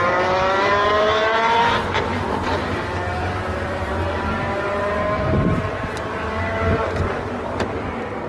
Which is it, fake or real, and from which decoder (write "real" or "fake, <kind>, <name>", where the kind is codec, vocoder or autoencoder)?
fake, vocoder, BigVGAN v2